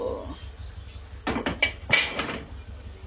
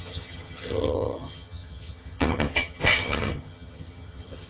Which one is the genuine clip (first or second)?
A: first